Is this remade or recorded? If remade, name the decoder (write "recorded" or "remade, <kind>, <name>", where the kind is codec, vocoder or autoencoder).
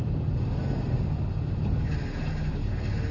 recorded